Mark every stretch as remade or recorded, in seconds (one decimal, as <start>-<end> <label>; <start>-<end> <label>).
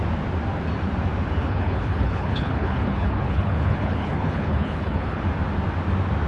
0.0-1.4 recorded; 1.4-5.2 remade; 5.2-6.3 recorded